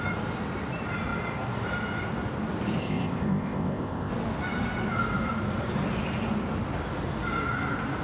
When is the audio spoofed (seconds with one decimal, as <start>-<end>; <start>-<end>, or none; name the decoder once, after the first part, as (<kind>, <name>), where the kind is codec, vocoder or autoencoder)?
2.8-4.1 (codec, ZipCodec)